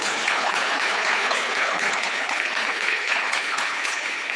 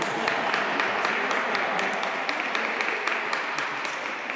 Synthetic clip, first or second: first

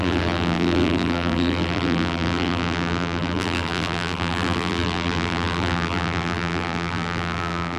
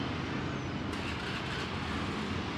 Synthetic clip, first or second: first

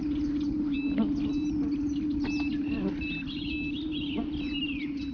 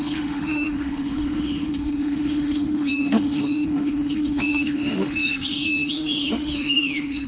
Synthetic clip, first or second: second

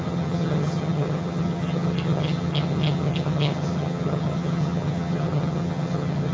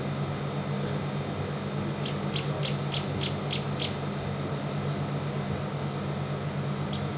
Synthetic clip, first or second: first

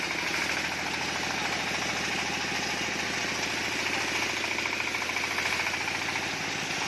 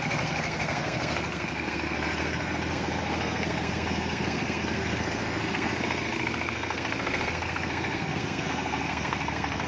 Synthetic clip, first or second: second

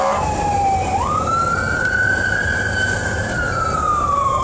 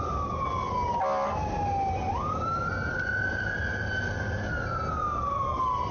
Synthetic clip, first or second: first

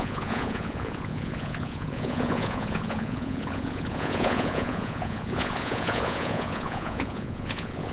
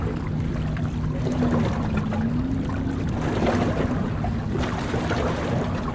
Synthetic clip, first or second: first